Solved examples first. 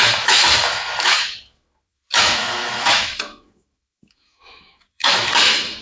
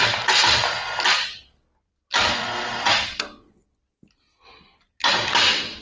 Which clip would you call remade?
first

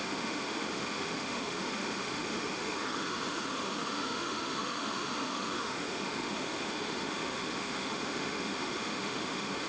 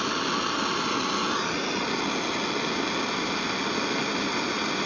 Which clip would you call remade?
first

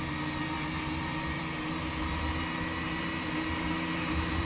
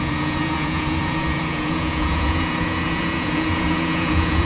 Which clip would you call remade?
second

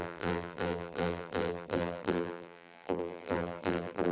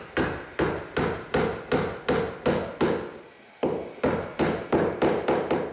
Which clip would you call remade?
first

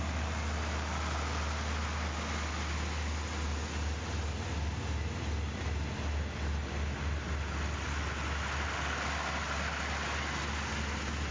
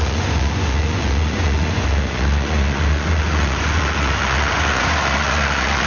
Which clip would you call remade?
second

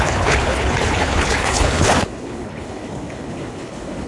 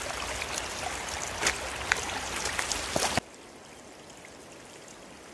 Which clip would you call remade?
first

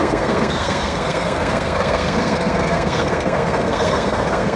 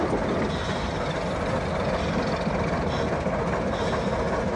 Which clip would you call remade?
first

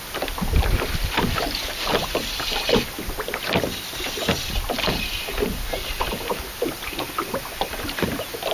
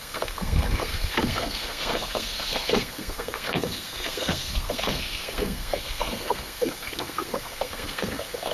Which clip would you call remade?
second